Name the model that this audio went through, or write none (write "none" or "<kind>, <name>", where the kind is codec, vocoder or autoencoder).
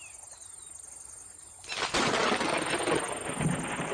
none